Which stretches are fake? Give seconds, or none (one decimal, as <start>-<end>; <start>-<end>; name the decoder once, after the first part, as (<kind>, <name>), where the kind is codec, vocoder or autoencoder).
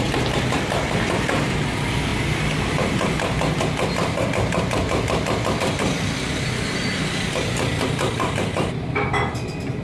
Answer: none